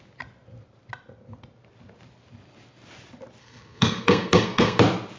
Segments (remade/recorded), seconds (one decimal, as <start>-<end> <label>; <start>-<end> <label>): 0.0-3.4 recorded; 3.4-4.8 remade; 4.8-5.2 recorded